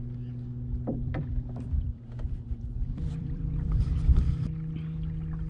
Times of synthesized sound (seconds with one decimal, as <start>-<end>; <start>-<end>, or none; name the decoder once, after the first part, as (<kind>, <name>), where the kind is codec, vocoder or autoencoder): 1.0-4.3 (vocoder, BigVGAN v2)